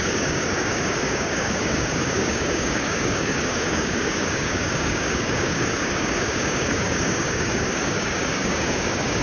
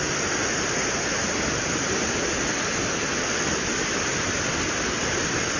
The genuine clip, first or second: second